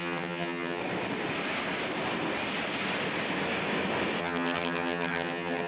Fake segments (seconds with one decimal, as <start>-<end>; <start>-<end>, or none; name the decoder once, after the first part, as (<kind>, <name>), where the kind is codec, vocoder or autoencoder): 0.0-0.8 (vocoder, HiFi-GAN); 4.2-5.7